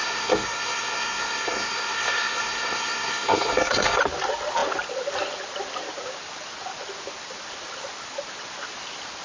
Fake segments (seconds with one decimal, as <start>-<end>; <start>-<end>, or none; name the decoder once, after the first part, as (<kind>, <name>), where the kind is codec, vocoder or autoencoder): 0.0-4.0 (codec, SNAC)